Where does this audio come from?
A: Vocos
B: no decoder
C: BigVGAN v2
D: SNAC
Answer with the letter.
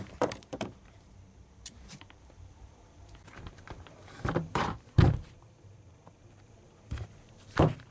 C